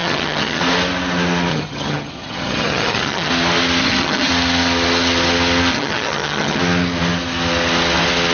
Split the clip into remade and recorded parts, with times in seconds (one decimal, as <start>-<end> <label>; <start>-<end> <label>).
0.0-0.6 remade; 0.6-1.5 recorded; 1.5-3.3 remade; 3.3-3.8 recorded; 3.8-4.3 remade; 4.3-5.7 recorded; 5.7-6.6 remade; 6.6-8.3 recorded